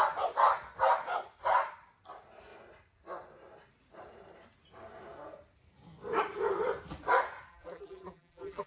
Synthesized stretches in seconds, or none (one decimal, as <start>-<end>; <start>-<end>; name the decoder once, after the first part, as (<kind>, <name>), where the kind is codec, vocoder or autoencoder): 7.5-8.7 (vocoder, BigVGAN v2)